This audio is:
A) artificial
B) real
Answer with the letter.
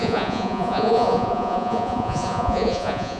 A